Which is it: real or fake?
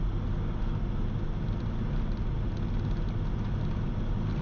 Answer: real